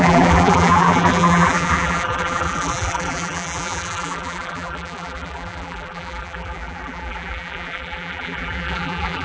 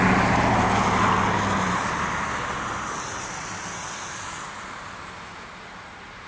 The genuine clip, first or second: second